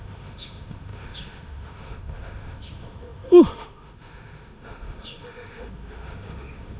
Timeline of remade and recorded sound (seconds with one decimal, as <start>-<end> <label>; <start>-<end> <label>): 0.0-6.8 remade